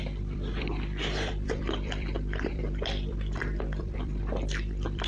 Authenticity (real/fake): fake